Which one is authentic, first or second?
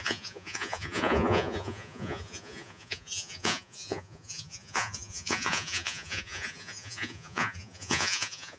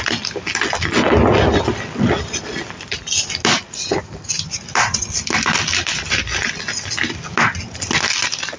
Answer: second